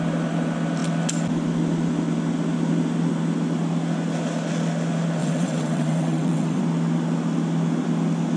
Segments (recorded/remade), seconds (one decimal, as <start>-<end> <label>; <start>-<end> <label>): 0.0-5.2 recorded; 5.2-6.6 remade; 6.6-8.4 recorded